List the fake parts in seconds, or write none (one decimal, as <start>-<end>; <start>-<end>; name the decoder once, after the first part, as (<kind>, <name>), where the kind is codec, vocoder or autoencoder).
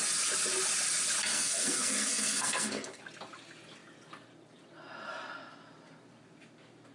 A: 1.3-3.0 (codec, SNAC)